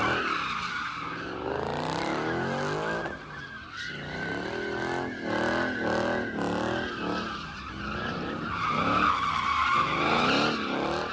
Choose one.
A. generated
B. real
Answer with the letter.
B